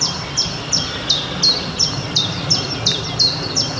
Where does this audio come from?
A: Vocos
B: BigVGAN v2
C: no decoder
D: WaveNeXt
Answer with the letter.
C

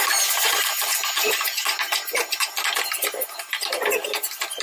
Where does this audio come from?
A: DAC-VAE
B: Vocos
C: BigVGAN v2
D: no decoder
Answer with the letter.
D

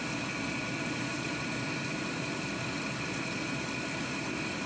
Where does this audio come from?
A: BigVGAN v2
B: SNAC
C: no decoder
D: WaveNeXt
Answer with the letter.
A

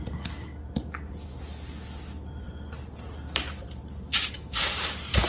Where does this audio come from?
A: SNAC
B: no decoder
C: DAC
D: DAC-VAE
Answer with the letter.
B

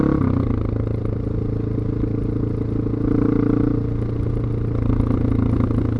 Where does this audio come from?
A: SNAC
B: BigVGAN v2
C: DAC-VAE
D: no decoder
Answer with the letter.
D